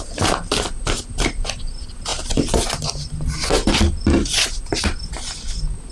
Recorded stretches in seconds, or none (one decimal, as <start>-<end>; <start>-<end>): 0.0-5.9